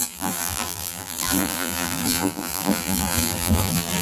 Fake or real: fake